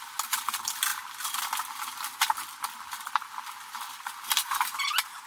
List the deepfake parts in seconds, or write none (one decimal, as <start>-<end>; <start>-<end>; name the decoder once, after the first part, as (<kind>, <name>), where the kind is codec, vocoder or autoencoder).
0.0-5.3 (vocoder, BigVGAN v2)